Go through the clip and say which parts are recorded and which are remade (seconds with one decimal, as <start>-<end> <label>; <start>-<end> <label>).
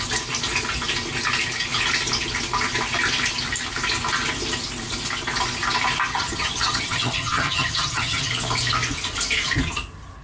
0.0-6.1 recorded; 6.1-8.3 remade; 8.3-10.2 recorded